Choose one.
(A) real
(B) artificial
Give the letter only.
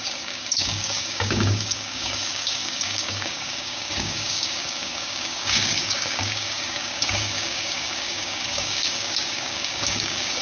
B